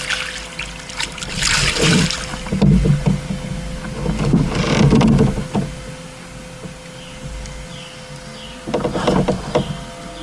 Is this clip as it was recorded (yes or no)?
yes